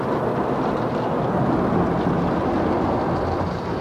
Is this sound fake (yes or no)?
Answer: no